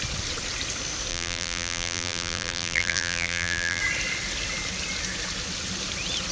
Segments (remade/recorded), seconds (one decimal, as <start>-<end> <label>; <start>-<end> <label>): 0.0-1.1 recorded; 1.1-3.8 remade; 3.8-6.3 recorded